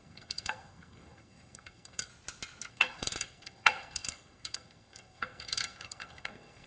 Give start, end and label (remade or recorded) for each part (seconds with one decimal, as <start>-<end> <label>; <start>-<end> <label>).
0.0-2.1 remade; 2.1-2.7 recorded; 2.7-6.7 remade